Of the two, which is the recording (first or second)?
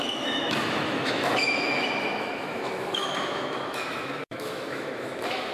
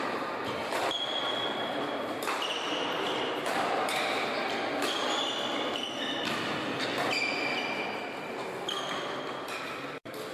second